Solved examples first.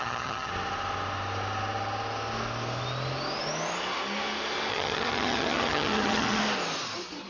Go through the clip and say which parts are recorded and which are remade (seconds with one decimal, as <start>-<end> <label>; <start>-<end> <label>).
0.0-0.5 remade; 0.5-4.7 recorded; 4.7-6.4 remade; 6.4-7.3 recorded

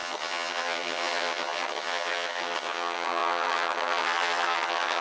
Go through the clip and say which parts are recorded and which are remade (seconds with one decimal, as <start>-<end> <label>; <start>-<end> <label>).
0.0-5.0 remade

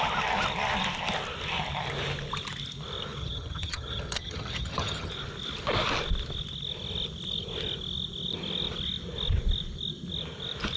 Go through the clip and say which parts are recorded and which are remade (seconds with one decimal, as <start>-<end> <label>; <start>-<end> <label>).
0.0-3.2 recorded; 3.2-5.1 remade; 5.1-10.8 recorded

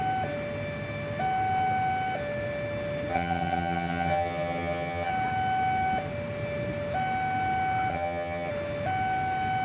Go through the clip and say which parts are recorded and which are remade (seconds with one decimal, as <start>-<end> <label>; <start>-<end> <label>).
0.0-3.1 recorded; 3.1-5.1 remade; 5.1-7.9 recorded; 7.9-8.5 remade; 8.5-9.6 recorded